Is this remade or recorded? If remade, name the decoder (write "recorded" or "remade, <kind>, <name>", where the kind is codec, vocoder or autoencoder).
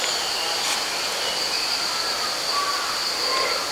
recorded